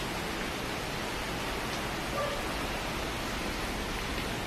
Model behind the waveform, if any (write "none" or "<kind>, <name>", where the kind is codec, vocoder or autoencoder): none